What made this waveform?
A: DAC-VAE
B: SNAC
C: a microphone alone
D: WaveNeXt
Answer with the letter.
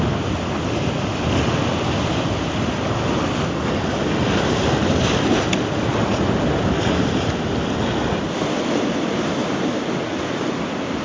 C